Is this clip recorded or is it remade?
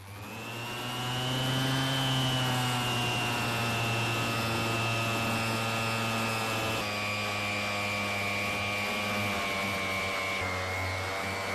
recorded